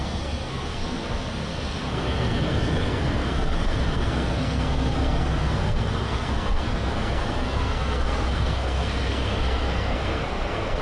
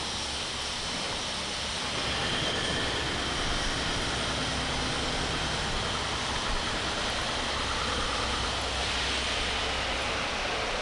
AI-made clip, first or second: first